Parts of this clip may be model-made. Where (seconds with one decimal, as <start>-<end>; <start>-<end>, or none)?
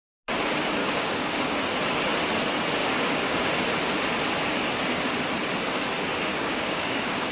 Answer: 0.8-1.5; 2.8-3.5; 6.3-7.3